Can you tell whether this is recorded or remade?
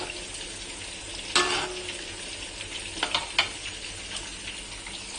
recorded